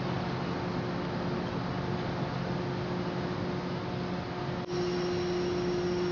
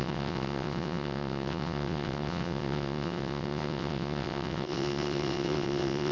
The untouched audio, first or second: first